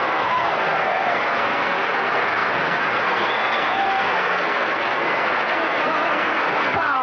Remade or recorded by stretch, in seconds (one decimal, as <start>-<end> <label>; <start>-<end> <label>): 0.0-7.0 remade